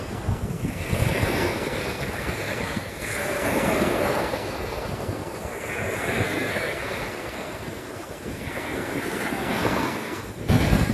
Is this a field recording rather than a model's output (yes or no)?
no